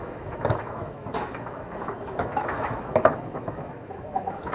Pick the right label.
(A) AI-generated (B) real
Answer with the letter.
A